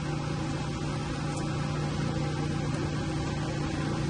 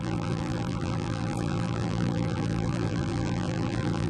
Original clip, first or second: first